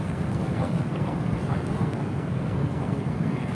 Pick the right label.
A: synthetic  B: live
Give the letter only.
A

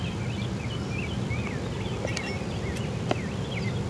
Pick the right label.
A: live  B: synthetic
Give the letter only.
A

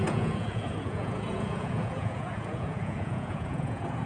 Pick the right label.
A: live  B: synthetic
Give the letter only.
B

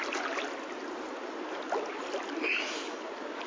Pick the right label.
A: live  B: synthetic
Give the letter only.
A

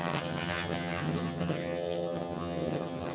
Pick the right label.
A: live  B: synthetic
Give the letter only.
B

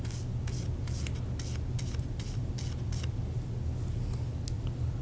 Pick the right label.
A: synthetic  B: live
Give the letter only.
B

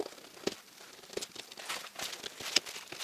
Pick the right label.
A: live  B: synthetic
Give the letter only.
A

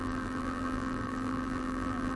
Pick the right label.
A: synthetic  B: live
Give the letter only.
A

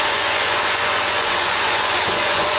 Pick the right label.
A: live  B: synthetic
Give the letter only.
B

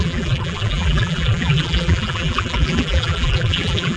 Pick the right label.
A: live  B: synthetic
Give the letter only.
B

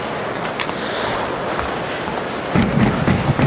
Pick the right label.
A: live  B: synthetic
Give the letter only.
A